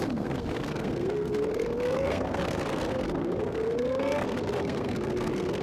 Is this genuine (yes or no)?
no